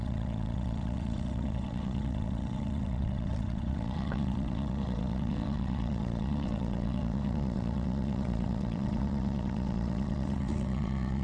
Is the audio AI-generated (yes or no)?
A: yes